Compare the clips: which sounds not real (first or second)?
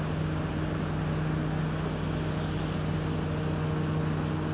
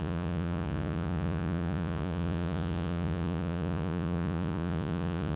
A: second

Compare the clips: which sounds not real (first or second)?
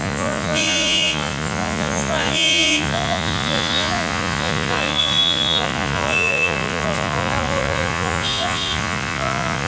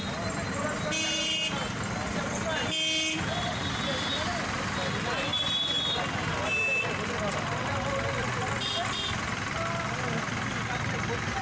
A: first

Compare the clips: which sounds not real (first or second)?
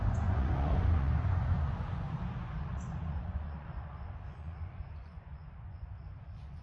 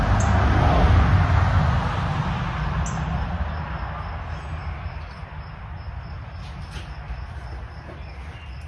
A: first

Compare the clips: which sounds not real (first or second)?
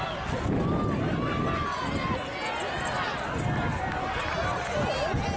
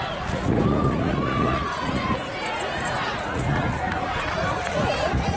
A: second